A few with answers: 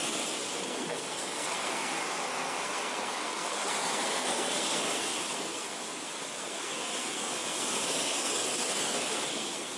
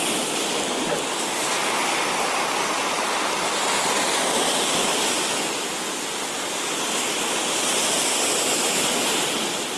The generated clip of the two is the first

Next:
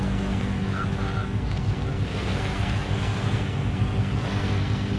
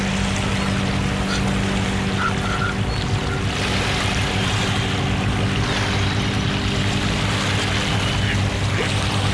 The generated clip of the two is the first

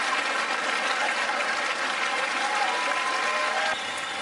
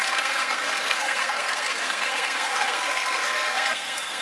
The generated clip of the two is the second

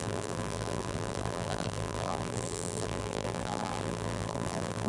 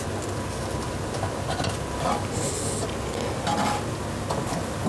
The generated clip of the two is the first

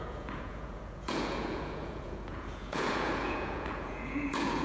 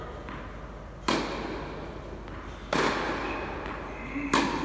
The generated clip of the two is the first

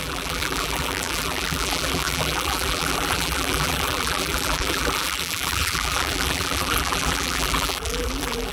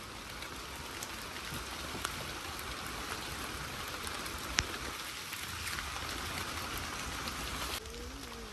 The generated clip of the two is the first